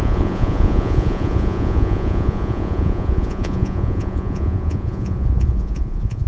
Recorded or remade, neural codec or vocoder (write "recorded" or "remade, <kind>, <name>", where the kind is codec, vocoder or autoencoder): remade, vocoder, Vocos